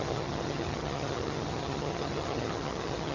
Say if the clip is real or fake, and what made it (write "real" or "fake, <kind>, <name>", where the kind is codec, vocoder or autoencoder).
fake, vocoder, HiFi-GAN